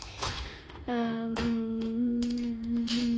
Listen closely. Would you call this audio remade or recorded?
remade